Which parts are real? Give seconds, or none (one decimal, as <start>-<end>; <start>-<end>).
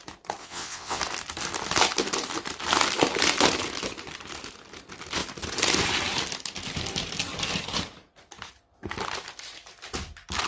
0.0-0.4; 1.0-10.5